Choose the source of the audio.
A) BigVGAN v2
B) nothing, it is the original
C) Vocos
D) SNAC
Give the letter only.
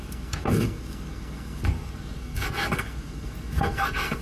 D